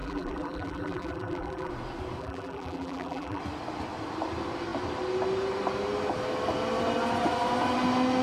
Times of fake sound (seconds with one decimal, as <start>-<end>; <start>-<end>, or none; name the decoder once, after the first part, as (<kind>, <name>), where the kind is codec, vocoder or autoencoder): 0.0-1.7 (vocoder, BigVGAN v2); 2.2-3.4